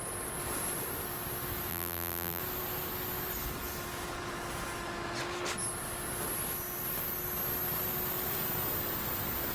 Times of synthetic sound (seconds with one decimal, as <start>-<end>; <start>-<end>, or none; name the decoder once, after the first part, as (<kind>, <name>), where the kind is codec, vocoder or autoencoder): 1.7-2.4 (vocoder, BigVGAN v2)